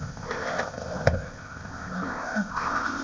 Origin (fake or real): fake